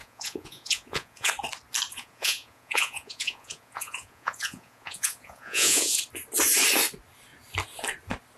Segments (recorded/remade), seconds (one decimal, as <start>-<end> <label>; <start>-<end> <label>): 0.0-1.3 remade; 1.3-1.9 recorded; 1.9-6.0 remade; 6.0-8.4 recorded